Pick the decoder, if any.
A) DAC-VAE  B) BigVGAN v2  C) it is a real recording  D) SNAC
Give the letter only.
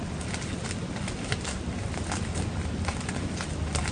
C